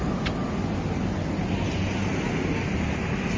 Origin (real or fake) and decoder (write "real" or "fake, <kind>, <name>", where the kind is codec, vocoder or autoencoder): real